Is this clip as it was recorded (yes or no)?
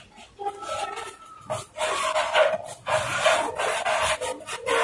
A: yes